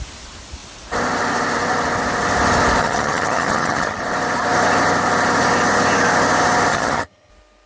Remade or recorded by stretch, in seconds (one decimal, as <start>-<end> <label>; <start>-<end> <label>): 0.0-2.8 recorded; 2.8-4.0 remade; 4.0-6.7 recorded; 6.7-7.3 remade; 7.3-7.7 recorded